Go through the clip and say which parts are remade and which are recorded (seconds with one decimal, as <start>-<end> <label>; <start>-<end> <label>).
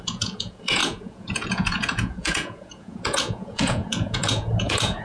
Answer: 0.0-5.0 remade